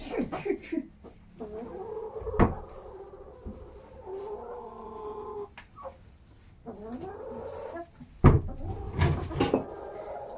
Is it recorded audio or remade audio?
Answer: recorded